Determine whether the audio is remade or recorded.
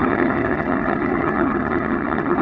remade